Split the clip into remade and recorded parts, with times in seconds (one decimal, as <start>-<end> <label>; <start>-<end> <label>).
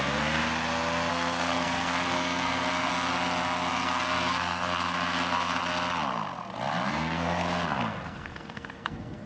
0.0-0.4 remade; 0.4-1.1 recorded; 1.1-2.9 remade; 2.9-3.7 recorded; 3.7-5.6 remade; 5.6-6.9 recorded; 6.9-9.3 remade